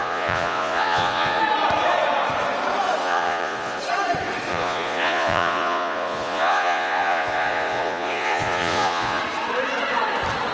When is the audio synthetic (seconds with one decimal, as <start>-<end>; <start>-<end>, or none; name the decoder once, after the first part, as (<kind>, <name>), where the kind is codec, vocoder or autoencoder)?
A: 0.0-1.4 (vocoder, Vocos); 3.0-3.8; 4.5-9.2